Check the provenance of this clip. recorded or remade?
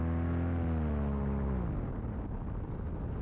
recorded